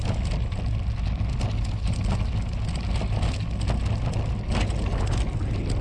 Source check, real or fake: real